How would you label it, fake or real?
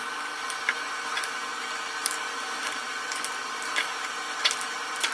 fake